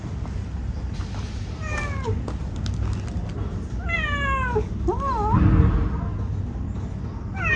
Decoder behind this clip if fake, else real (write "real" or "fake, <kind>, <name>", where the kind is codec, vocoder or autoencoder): real